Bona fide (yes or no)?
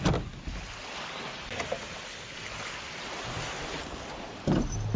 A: yes